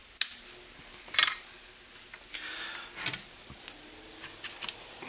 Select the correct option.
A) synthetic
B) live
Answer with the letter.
B